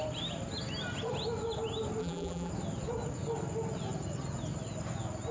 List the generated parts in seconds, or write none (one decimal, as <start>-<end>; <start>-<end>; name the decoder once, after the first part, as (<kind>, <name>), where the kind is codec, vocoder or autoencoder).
2.0-2.5 (vocoder, BigVGAN v2)